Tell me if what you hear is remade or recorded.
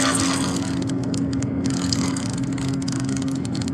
remade